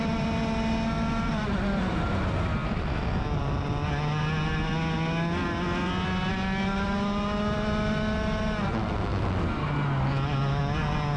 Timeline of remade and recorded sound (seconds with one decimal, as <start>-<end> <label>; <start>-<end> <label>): 0.0-11.2 recorded